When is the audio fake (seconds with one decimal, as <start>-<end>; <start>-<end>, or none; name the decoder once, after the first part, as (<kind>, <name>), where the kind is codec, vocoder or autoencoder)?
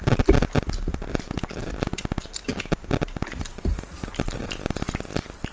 none